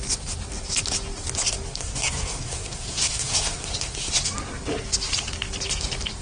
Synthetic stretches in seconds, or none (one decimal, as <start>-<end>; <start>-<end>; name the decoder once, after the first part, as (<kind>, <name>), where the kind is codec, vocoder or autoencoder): 1.7-4.1 (codec, SNAC)